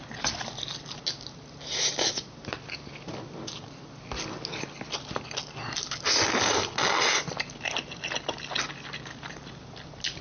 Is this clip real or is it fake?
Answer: real